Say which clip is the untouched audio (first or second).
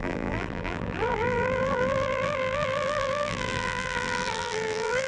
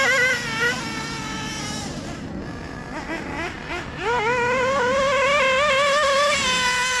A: second